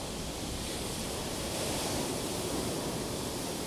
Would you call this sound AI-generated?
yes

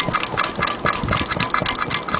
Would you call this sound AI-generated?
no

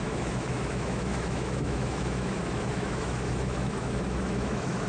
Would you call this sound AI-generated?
yes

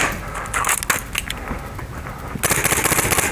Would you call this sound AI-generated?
no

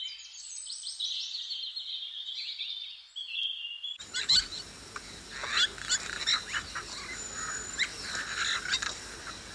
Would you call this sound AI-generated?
no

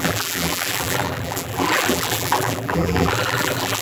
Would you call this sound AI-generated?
yes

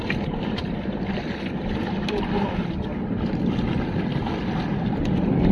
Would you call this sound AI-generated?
no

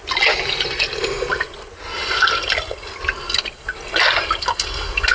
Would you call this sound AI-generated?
no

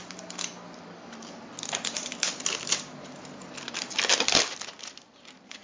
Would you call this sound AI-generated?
yes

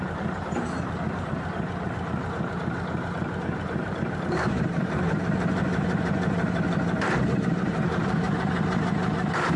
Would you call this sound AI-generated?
yes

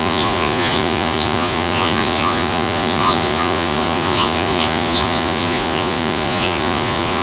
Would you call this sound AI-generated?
yes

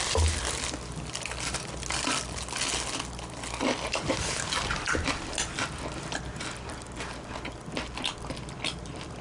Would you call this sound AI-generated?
no